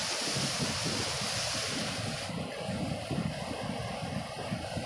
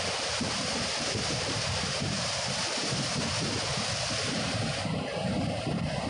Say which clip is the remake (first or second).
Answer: second